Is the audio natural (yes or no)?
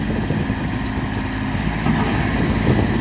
yes